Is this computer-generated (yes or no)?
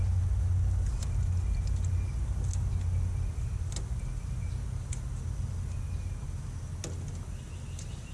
no